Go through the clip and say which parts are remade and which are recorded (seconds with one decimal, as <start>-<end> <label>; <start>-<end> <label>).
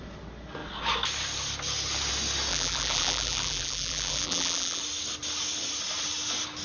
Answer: 0.0-2.5 recorded; 2.5-4.8 remade; 4.8-6.6 recorded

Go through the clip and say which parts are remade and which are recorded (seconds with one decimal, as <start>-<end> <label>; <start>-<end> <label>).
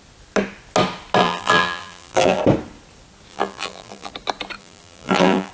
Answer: 0.0-1.2 recorded; 1.2-2.4 remade; 2.4-3.3 recorded; 3.3-4.1 remade; 4.1-4.6 recorded; 4.6-5.5 remade